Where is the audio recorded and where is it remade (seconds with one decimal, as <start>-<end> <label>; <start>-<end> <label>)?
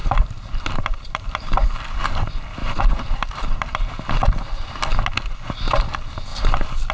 0.0-2.1 remade; 2.1-2.6 recorded; 2.6-3.8 remade; 3.8-6.3 recorded; 6.3-6.9 remade